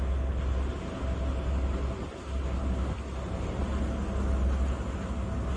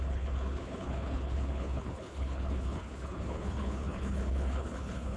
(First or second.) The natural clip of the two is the first